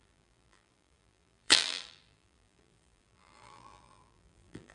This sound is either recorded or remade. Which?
remade